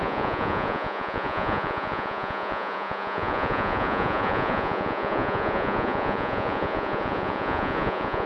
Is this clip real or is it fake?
fake